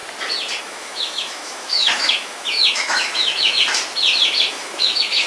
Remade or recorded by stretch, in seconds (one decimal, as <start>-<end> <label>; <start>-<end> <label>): 0.0-0.6 recorded; 0.6-3.6 remade; 3.6-4.5 recorded; 4.5-5.3 remade